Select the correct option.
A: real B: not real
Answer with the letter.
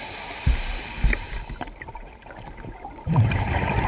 B